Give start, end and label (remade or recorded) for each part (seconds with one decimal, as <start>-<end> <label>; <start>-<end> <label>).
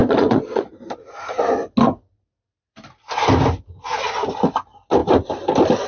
0.0-0.7 remade; 0.7-5.9 recorded